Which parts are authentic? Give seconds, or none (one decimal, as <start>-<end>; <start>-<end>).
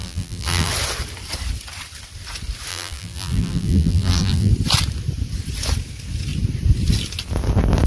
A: 0.7-2.7; 4.5-7.9